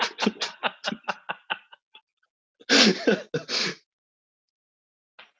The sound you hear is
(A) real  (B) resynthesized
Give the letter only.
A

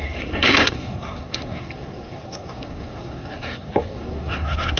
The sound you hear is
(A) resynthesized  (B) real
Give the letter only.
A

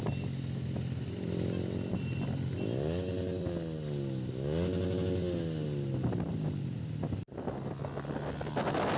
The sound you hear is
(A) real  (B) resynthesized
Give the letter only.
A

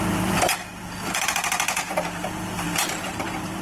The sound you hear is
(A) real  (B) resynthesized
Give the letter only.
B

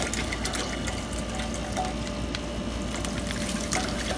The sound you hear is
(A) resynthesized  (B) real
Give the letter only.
B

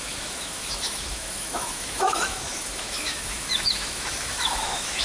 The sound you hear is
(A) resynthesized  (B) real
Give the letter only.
A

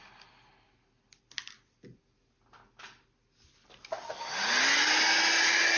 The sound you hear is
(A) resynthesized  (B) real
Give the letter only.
B